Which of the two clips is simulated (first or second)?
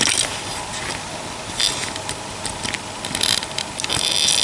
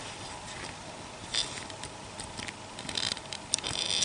second